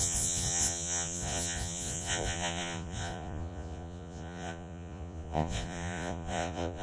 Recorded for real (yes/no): no